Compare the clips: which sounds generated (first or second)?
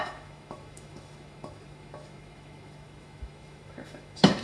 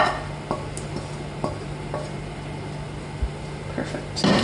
first